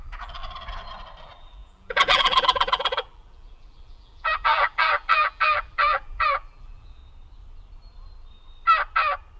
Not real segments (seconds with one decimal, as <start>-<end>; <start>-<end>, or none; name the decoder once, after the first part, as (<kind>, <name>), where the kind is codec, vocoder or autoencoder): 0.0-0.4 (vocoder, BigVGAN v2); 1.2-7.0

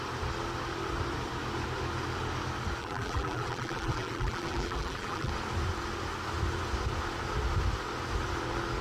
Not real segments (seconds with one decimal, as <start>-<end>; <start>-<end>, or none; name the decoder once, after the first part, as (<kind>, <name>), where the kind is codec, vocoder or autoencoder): 2.8-5.3 (vocoder, BigVGAN v2)

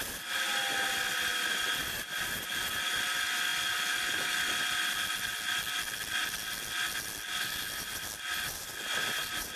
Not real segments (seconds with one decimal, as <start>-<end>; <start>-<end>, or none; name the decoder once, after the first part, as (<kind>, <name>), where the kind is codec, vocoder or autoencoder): 1.3-1.8 (vocoder, BigVGAN v2)

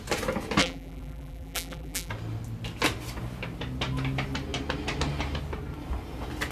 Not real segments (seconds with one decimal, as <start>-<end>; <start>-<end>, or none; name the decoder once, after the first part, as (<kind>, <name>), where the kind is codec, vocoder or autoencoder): 0.6-2.1 (vocoder, BigVGAN v2)